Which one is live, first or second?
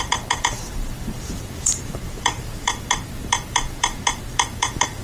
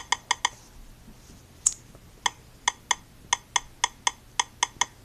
second